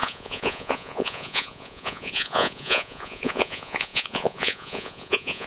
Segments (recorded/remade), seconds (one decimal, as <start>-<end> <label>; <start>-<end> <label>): 0.0-5.5 remade